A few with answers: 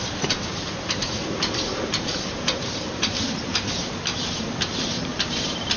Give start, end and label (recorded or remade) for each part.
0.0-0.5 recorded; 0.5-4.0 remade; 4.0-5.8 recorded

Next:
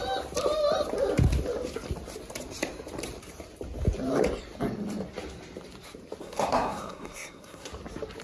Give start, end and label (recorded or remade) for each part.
0.0-6.2 recorded; 6.2-7.7 remade; 7.7-8.2 recorded

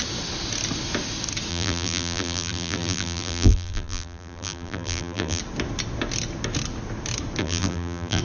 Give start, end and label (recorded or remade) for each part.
0.0-1.5 recorded; 1.5-5.4 remade; 5.4-7.4 recorded; 7.4-8.2 remade

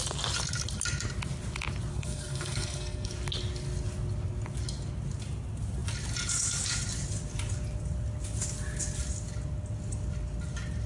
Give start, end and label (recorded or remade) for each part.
0.0-1.9 recorded; 1.9-3.1 remade; 3.1-10.9 recorded

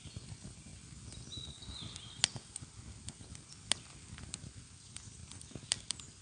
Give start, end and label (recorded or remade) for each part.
0.0-6.2 recorded